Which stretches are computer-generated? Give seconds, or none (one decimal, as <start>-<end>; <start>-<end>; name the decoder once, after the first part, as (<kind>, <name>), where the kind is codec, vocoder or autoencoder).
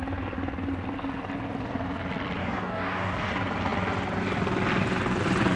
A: 2.4-3.3 (codec, DAC)